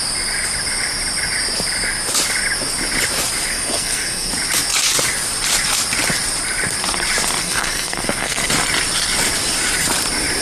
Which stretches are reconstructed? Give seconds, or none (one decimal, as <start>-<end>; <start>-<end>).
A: 3.5-4.3; 7.4-8.5